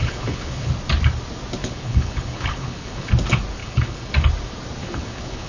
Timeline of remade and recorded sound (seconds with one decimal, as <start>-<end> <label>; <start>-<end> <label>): 0.0-0.7 remade; 0.7-1.6 recorded; 1.6-3.1 remade; 3.1-3.6 recorded; 3.6-4.1 remade; 4.1-4.8 recorded; 4.8-5.5 remade